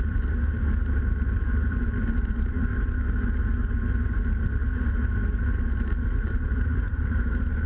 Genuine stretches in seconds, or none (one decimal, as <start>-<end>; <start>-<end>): 2.7-6.2